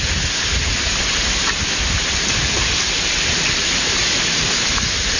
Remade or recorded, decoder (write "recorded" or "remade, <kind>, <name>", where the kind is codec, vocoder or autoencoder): recorded